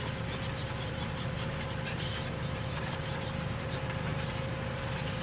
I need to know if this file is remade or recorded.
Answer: remade